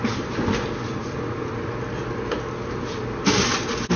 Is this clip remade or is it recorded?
recorded